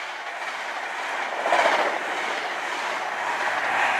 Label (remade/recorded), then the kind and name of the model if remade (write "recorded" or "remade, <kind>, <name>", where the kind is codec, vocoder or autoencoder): recorded